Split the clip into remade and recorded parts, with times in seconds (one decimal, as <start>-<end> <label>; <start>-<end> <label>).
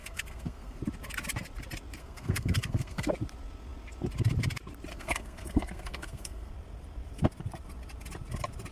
0.0-0.8 remade; 0.8-2.0 recorded; 2.0-3.1 remade; 3.1-4.9 recorded; 4.9-6.5 remade; 6.5-8.7 recorded